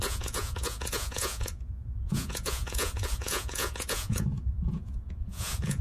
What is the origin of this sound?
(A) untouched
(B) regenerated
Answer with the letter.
B